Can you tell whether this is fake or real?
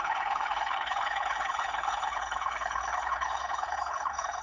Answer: fake